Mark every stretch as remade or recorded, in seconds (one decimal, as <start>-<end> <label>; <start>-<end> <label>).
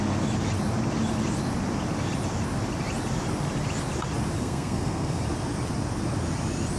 0.0-4.4 recorded; 4.4-5.2 remade; 5.2-6.8 recorded